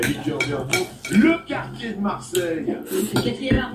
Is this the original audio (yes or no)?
yes